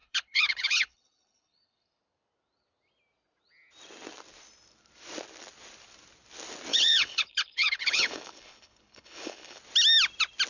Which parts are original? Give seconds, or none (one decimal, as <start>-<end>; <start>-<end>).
2.0-6.7; 9.6-10.5